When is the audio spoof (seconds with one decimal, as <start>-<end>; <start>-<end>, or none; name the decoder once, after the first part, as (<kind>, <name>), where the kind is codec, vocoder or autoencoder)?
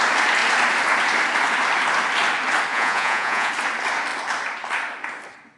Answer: 2.7-3.5 (vocoder, Vocos)